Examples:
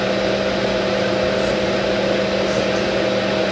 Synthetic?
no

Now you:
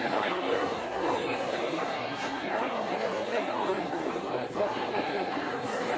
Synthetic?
yes